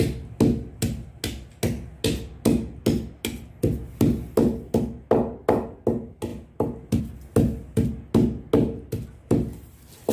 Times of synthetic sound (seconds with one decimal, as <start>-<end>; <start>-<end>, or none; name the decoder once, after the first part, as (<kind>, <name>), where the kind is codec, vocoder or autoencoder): none